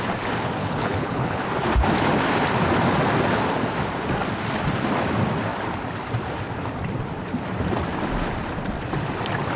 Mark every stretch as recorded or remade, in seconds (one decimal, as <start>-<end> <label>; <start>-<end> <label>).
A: 0.0-0.6 recorded; 0.6-1.4 remade; 1.4-9.6 recorded